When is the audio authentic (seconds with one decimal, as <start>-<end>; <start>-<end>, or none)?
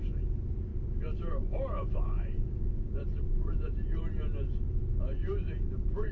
0.0-0.7; 4.4-5.2